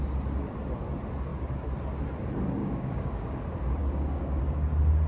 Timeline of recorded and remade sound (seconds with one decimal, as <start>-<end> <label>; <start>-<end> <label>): 0.0-2.6 recorded; 2.6-3.4 remade; 3.4-3.8 recorded; 3.8-4.4 remade; 4.4-5.1 recorded